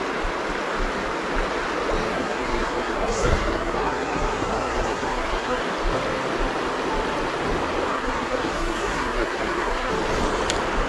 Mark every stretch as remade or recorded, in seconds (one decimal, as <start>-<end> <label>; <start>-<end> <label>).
0.0-2.1 recorded; 2.1-5.6 remade; 5.6-7.9 recorded; 7.9-9.9 remade; 9.9-10.9 recorded